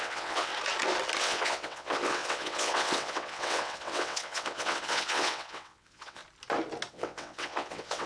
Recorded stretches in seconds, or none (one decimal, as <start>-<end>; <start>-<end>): 0.5-1.2; 6.2-6.9